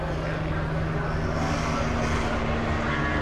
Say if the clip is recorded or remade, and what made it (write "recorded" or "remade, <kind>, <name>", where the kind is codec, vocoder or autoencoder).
recorded